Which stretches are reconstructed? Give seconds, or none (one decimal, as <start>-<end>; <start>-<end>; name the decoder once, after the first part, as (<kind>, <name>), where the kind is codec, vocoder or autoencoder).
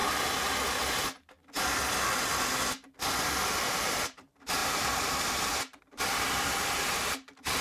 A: 3.1-7.6 (vocoder, BigVGAN v2)